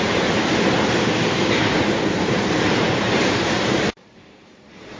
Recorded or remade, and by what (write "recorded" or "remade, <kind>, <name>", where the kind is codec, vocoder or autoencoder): remade, vocoder, BigVGAN v2